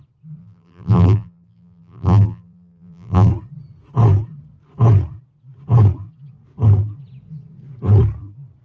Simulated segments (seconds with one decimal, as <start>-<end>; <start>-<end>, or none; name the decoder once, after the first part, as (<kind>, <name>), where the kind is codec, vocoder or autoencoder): 0.4-3.3 (vocoder, BigVGAN v2)